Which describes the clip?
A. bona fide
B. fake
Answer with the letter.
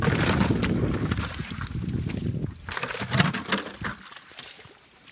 A